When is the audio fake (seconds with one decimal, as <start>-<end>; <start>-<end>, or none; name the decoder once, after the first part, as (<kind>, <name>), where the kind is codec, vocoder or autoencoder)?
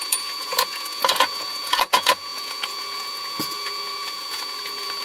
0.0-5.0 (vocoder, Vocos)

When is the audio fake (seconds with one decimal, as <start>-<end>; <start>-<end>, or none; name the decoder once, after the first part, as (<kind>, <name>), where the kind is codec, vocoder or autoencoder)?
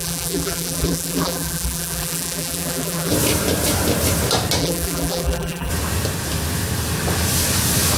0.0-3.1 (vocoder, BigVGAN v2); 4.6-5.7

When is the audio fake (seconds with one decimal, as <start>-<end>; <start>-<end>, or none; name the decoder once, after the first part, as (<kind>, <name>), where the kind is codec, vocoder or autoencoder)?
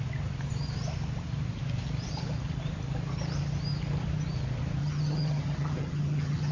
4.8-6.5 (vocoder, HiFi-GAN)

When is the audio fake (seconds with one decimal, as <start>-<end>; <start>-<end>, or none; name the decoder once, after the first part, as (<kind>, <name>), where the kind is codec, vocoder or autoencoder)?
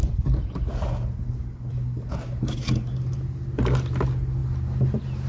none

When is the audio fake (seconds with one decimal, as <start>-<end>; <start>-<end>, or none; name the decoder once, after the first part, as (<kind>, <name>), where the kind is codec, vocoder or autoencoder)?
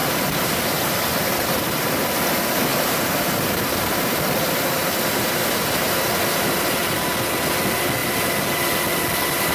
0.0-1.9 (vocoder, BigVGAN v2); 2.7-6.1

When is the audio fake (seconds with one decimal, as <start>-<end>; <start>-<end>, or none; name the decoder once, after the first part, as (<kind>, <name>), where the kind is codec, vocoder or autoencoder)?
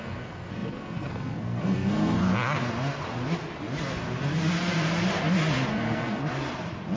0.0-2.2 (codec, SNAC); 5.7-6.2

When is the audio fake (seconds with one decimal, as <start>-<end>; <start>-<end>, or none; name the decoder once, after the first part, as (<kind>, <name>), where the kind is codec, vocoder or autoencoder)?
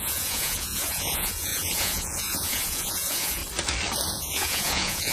0.0-3.4 (vocoder, Vocos); 4.1-5.1